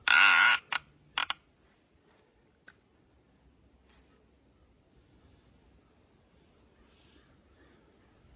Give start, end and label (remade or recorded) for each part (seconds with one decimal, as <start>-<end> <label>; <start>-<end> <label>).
0.0-8.4 recorded